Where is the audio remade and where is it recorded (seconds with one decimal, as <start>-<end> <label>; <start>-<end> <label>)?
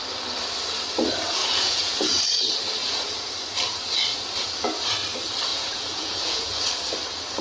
0.0-1.4 recorded; 1.4-2.2 remade; 2.2-2.8 recorded; 2.8-3.3 remade; 3.3-5.5 recorded; 5.5-6.5 remade; 6.5-7.4 recorded